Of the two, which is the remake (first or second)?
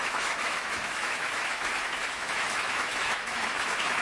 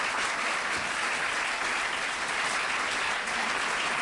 first